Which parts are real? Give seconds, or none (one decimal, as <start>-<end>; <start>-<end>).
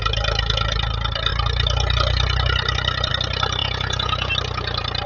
0.0-3.6; 4.3-5.1